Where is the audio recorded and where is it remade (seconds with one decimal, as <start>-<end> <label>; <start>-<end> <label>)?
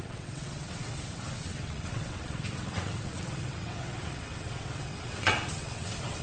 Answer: 0.0-6.2 remade